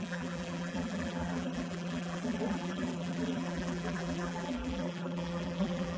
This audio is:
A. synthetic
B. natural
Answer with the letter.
A